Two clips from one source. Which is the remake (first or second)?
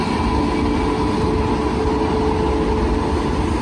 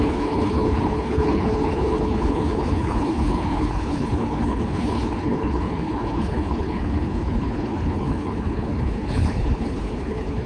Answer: second